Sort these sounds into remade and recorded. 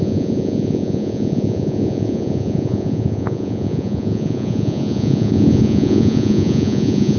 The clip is remade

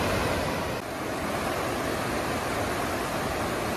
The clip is recorded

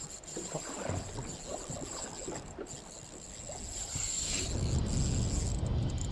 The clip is recorded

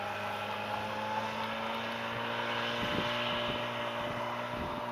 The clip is recorded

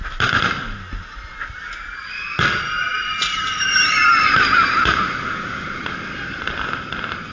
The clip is recorded